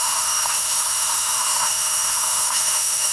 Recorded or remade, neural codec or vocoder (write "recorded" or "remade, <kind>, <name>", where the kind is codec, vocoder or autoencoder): remade, autoencoder, DAC-VAE